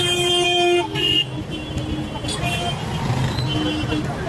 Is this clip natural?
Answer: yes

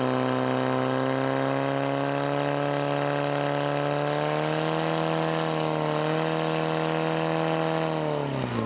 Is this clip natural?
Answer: yes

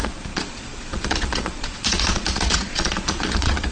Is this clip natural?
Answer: no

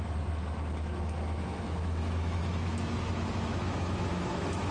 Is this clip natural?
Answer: no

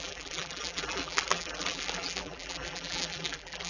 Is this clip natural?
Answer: no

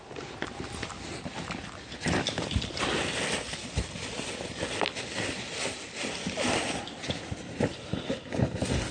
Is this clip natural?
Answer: yes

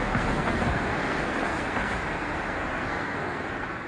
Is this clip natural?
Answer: no